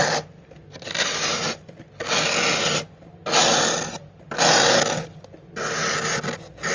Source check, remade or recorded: recorded